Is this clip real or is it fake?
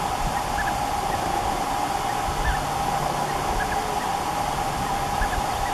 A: real